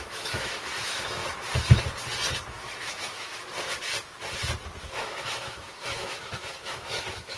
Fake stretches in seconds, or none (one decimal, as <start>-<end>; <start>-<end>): 0.0-1.2; 2.4-3.3; 4.8-7.4